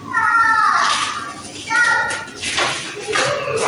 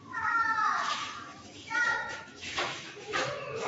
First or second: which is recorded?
first